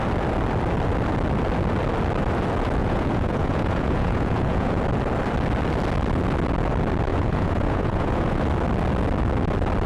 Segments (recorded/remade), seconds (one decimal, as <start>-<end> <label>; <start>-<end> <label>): 0.0-2.8 recorded; 2.8-4.8 remade; 4.8-7.1 recorded; 7.1-8.4 remade; 8.4-9.9 recorded